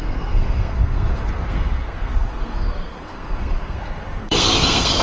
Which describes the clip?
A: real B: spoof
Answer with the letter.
B